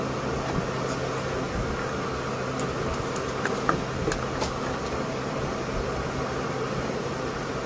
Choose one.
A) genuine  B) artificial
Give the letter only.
A